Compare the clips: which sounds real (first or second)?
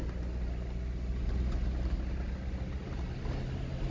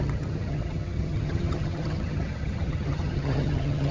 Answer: first